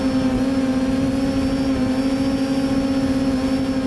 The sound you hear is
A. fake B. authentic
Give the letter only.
B